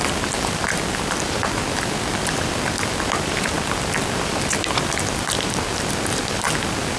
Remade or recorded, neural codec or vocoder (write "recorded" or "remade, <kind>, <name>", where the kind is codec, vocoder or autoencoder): remade, vocoder, BigVGAN v2